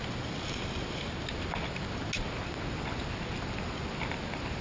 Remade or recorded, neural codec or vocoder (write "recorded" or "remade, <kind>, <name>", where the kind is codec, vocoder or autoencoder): recorded